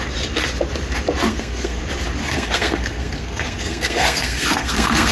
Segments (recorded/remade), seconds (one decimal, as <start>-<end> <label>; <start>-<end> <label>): 0.0-1.3 recorded; 1.3-1.8 remade; 1.8-2.2 recorded; 2.2-5.1 remade

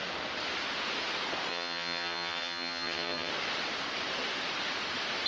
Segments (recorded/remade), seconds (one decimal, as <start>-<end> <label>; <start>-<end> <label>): 0.0-1.5 recorded; 1.5-3.3 remade; 3.3-5.3 recorded

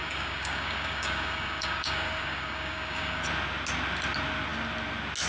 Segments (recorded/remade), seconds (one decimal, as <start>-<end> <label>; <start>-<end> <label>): 0.0-3.2 remade; 3.2-5.3 recorded

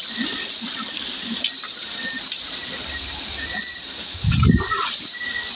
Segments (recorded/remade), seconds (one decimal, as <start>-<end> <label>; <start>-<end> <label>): 0.0-1.8 recorded; 1.8-5.1 remade; 5.1-5.5 recorded